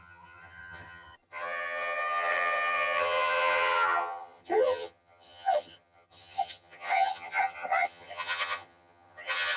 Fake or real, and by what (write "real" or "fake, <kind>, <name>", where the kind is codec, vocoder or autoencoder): fake, vocoder, HiFi-GAN